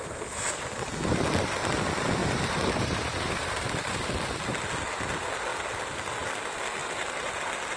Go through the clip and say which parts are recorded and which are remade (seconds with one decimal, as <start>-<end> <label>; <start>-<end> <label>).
0.0-2.2 recorded; 2.2-4.1 remade; 4.1-6.8 recorded; 6.8-7.3 remade; 7.3-7.8 recorded